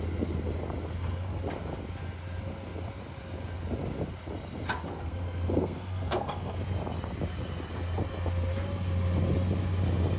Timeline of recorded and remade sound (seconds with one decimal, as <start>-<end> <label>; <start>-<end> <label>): 0.0-4.9 recorded; 4.9-6.6 remade; 6.6-10.2 recorded